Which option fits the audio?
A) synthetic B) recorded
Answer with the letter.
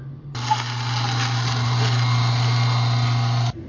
B